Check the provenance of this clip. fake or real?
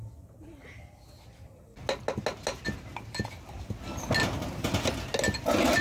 real